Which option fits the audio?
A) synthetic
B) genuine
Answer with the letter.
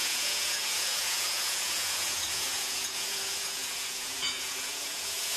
A